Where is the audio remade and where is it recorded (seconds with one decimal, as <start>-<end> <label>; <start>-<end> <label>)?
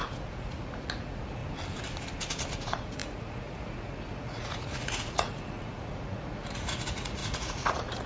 0.0-1.4 remade; 1.4-2.5 recorded; 2.5-8.1 remade